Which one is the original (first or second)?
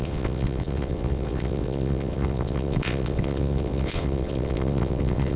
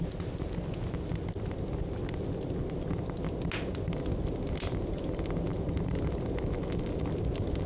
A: second